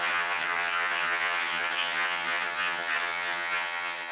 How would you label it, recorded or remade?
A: remade